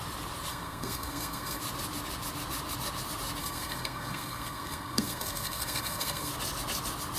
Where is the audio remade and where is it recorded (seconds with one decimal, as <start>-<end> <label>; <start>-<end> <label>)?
0.0-0.5 recorded; 0.5-1.6 remade; 1.6-3.4 recorded; 3.4-6.3 remade; 6.3-7.2 recorded